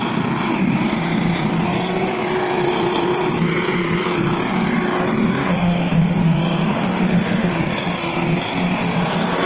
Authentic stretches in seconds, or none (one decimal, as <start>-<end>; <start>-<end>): 0.0-5.4; 7.6-9.5